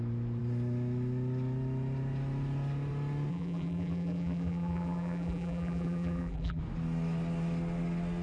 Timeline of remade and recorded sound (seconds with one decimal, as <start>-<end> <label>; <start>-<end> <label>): 0.0-3.3 recorded; 3.3-6.6 remade; 6.6-8.2 recorded